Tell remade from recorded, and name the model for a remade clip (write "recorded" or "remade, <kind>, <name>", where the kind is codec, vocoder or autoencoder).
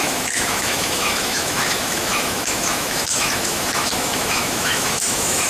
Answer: remade, autoencoder, DAC-VAE